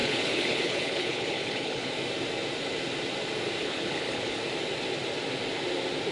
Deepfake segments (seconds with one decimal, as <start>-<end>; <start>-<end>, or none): 0.0-1.9; 3.6-4.4